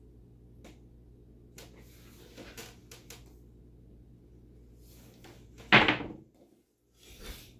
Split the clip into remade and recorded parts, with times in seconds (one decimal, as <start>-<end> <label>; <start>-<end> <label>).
0.0-7.6 recorded

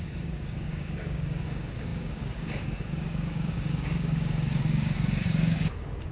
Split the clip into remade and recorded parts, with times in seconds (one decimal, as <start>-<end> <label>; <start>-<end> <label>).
0.0-6.1 remade

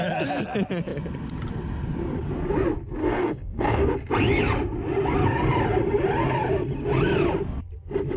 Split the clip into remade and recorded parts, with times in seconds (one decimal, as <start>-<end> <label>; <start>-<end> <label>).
0.0-3.0 recorded; 3.0-3.9 remade; 3.9-8.2 recorded

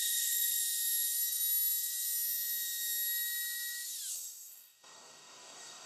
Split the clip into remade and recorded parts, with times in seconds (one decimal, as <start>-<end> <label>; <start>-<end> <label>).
0.0-0.6 remade; 0.6-4.1 recorded; 4.1-5.9 remade

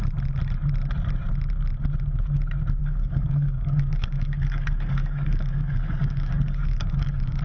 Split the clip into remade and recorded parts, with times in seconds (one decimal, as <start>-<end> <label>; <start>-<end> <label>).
0.0-2.8 recorded; 2.8-7.4 remade

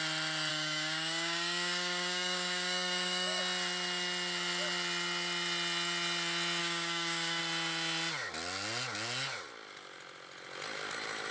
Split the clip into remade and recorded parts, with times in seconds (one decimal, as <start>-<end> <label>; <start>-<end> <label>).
0.0-0.5 recorded; 0.5-3.4 remade; 3.4-6.6 recorded; 6.6-7.4 remade; 7.4-11.3 recorded

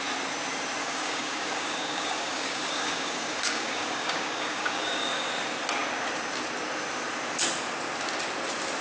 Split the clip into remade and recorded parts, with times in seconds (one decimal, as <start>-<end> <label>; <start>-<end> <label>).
0.0-0.8 recorded; 0.8-5.3 remade; 5.3-8.8 recorded